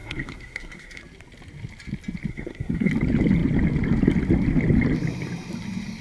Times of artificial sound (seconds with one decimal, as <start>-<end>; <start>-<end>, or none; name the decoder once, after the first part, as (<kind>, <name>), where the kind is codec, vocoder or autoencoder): 0.0-1.0 (codec, SNAC); 2.3-2.9